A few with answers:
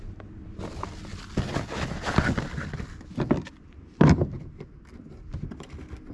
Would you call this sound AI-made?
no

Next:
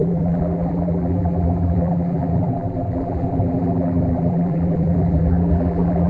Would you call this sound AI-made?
yes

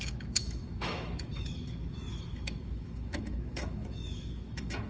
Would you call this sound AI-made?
yes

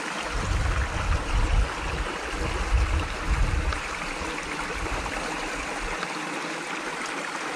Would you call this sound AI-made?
no